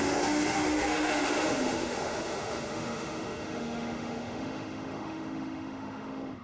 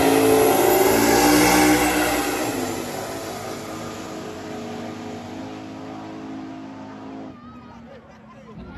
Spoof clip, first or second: first